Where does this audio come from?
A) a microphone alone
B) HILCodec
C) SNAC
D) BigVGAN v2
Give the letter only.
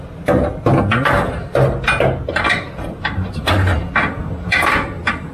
A